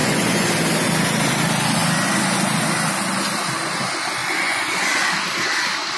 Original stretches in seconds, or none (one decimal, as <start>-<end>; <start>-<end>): 0.5-4.2; 5.1-6.0